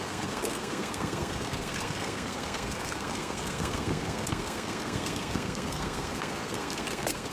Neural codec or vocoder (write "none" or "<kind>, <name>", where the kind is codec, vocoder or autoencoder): codec, SNAC